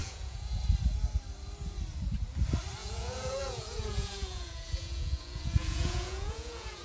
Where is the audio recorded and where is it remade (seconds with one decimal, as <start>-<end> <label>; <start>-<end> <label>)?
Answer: 0.0-0.6 remade; 0.6-2.8 recorded; 2.8-6.8 remade